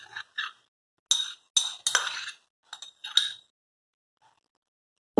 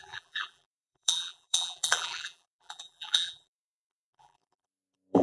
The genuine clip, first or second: first